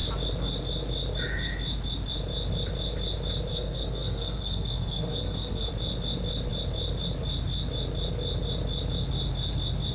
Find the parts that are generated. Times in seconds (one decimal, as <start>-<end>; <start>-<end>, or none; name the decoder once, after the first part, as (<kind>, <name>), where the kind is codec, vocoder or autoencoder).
3.5-5.7 (codec, SNAC)